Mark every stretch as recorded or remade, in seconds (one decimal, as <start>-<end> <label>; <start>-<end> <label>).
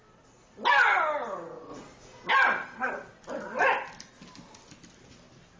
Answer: 0.0-5.6 recorded